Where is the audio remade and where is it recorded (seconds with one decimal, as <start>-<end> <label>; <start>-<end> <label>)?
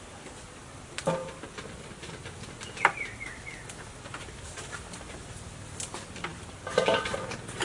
0.0-7.6 remade